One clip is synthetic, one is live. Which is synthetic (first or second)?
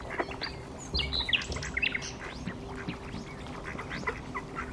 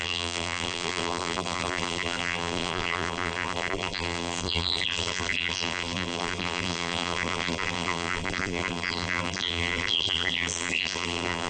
second